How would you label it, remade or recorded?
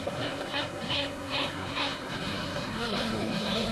remade